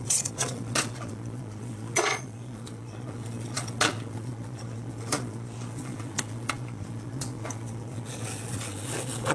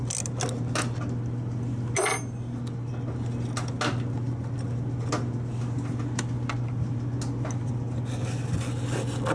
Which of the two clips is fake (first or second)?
first